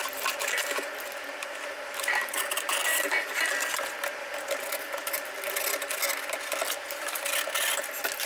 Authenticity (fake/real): real